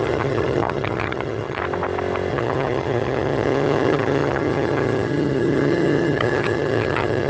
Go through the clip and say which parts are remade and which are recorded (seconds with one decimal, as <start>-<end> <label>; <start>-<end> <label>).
0.0-1.6 remade; 1.6-2.3 recorded; 2.3-7.3 remade